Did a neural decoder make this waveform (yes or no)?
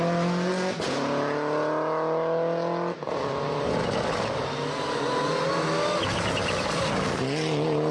no